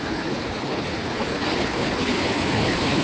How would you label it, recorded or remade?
remade